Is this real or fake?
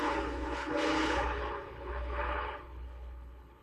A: fake